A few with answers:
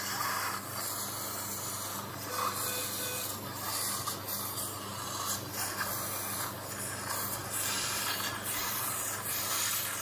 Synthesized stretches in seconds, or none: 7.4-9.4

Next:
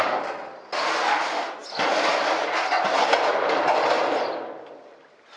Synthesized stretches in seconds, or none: none